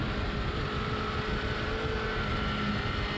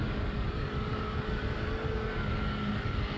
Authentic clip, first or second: first